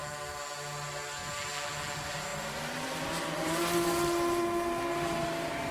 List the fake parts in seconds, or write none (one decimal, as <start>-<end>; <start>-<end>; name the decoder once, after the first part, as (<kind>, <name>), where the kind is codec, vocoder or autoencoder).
2.3-5.7 (vocoder, BigVGAN v2)